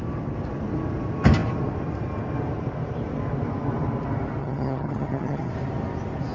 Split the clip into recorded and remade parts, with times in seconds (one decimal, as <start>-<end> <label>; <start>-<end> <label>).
0.0-4.4 recorded; 4.4-5.5 remade; 5.5-6.3 recorded